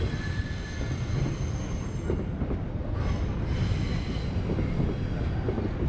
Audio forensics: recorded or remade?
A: recorded